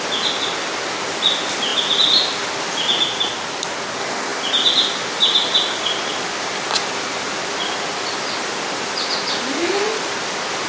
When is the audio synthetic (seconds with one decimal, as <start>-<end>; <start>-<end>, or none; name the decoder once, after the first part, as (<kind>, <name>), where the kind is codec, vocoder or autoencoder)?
none